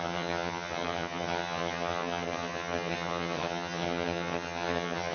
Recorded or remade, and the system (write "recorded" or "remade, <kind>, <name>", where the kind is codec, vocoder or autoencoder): remade, vocoder, HiFi-GAN